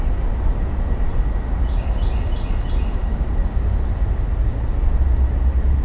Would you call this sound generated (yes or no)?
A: no